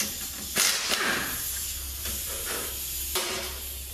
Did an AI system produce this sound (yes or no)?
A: no